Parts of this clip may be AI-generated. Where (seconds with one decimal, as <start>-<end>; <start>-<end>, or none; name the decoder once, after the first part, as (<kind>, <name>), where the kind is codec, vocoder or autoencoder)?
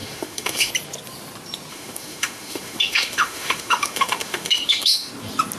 0.0-0.7 (autoencoder, DAC-VAE); 1.7-5.1